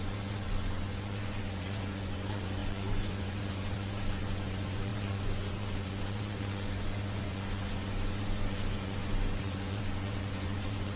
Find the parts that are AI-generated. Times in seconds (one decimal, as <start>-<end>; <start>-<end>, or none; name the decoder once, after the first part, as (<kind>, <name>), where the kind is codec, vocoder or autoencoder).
0.0-11.0 (vocoder, Vocos)